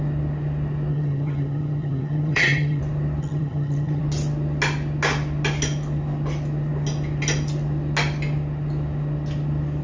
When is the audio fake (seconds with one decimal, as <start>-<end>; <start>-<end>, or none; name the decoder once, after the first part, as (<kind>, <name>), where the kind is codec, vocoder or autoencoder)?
0.9-2.8 (vocoder, HiFi-GAN); 3.2-4.0